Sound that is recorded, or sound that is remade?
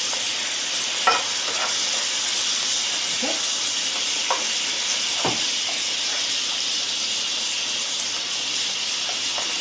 recorded